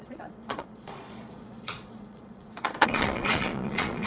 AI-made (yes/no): yes